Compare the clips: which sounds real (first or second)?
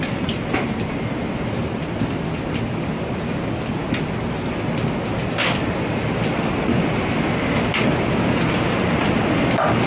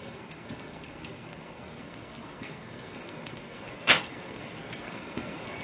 first